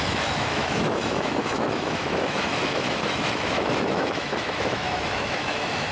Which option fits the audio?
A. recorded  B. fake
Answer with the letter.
B